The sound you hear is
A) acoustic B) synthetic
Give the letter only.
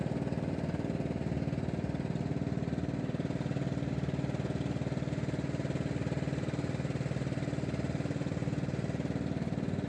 A